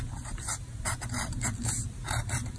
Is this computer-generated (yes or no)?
no